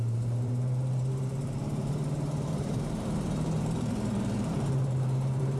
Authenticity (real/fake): fake